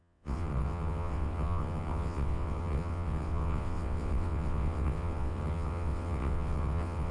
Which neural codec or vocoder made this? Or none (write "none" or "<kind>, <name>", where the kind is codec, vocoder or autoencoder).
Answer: vocoder, WaveNeXt